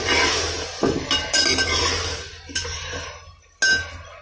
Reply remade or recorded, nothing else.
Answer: recorded